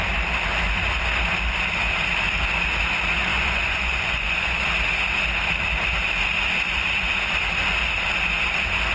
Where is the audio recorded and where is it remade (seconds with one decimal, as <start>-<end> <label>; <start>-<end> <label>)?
0.0-3.3 recorded; 3.3-4.6 remade; 4.6-8.9 recorded